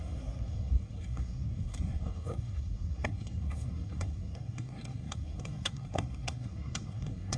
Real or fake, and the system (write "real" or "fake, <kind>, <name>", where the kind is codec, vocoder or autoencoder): fake, codec, SNAC